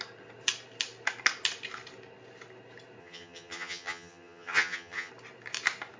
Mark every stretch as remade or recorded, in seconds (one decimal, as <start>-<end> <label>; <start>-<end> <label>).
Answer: 0.0-3.0 recorded; 3.0-5.1 remade; 5.1-6.0 recorded